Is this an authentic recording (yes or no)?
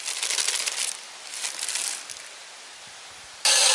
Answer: yes